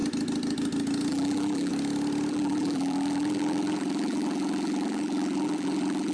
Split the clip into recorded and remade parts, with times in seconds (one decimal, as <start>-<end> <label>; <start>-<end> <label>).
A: 0.0-1.1 recorded; 1.1-1.7 remade; 1.7-2.3 recorded; 2.3-6.1 remade